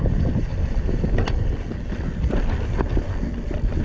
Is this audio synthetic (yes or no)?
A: no